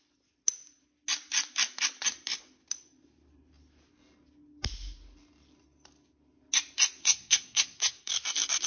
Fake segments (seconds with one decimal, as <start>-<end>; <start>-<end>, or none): 7.0-8.1